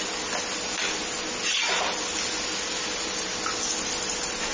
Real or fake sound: real